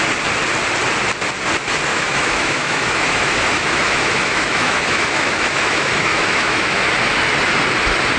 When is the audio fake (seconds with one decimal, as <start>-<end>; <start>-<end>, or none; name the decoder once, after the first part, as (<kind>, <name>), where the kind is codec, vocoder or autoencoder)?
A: 1.9-6.8 (autoencoder, DAC-VAE)